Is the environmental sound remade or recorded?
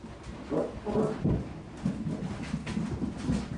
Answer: recorded